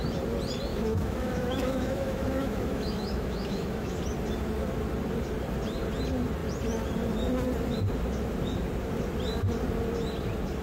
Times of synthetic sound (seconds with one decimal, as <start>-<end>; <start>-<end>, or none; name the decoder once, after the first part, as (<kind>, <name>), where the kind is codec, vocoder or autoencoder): 0.7-4.0 (autoencoder, DAC-VAE)

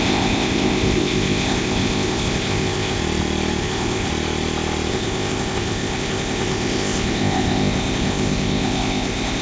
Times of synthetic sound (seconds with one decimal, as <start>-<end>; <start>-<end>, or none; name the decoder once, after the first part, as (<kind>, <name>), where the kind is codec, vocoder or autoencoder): 0.0-3.0 (codec, ZipCodec); 3.6-4.1; 4.9-9.4

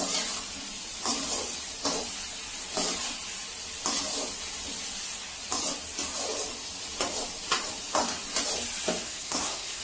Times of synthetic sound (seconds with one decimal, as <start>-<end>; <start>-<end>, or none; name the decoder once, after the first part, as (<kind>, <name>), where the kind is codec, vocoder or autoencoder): 9.0-9.8 (codec, SNAC)

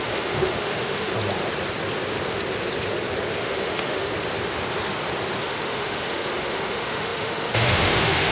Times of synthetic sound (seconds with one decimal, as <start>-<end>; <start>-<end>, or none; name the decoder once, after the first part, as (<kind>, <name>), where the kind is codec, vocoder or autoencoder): 0.0-1.1 (autoencoder, DAC-VAE); 3.4-4.1; 5.4-8.3

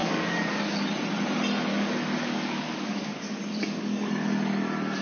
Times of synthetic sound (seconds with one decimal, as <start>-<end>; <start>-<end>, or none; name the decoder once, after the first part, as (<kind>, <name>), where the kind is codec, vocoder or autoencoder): 0.0-0.8 (codec, DAC); 1.7-4.1

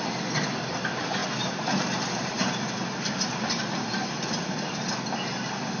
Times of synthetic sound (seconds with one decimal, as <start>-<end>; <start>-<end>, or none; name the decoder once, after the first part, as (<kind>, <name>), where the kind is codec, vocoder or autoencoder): 1.2-4.7 (vocoder, BigVGAN v2)